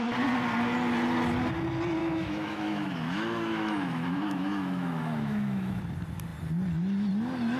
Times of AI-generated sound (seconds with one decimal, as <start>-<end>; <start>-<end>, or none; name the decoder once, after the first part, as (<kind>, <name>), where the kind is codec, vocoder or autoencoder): 2.0-5.8 (autoencoder, DAC-VAE)